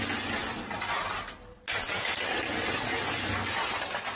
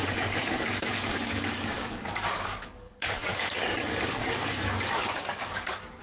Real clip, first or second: first